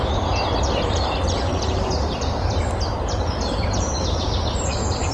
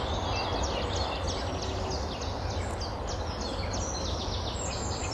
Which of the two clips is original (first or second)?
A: second